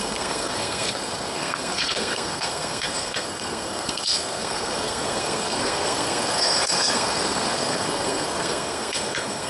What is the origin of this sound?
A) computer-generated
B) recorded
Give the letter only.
A